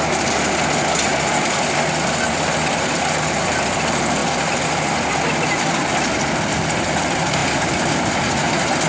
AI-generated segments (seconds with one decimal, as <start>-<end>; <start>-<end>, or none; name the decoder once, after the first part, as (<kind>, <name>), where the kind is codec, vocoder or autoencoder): 7.4-7.9 (vocoder, BigVGAN v2)